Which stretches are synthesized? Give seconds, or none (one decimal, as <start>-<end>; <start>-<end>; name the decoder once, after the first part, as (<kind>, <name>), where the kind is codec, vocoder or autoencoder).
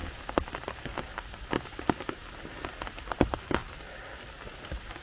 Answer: none